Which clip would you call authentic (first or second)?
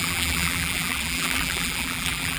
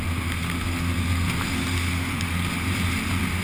second